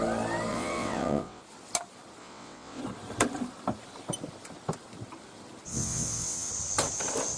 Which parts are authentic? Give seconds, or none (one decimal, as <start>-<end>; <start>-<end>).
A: 0.0-0.5; 1.4-2.2; 2.8-5.7; 6.5-7.4